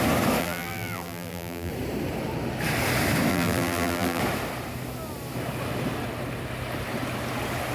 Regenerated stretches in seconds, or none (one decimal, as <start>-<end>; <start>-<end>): 0.4-1.7; 3.3-4.2